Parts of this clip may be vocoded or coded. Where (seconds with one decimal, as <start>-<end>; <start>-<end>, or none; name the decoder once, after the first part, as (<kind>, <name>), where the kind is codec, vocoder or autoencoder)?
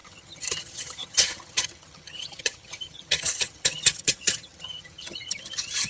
0.0-5.9 (vocoder, HiFi-GAN)